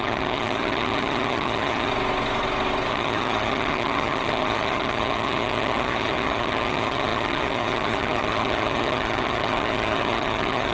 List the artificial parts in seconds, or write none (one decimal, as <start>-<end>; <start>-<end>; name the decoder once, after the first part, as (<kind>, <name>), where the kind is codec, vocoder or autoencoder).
0.0-1.9 (vocoder, HiFi-GAN); 2.9-10.7